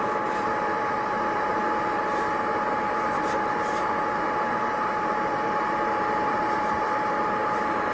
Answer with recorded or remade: remade